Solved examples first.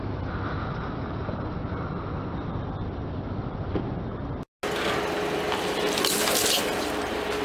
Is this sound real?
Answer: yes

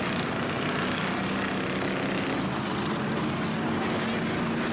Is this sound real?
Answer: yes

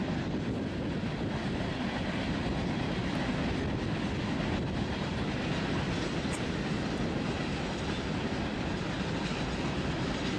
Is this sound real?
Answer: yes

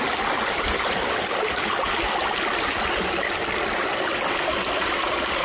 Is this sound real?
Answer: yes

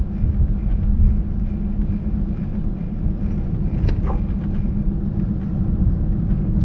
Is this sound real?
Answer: yes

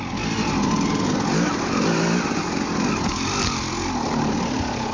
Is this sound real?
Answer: yes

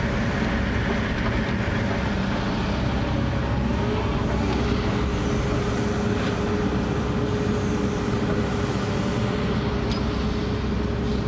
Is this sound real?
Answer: yes